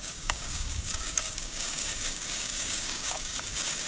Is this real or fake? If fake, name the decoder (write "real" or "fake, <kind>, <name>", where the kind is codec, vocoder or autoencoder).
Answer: fake, codec, DAC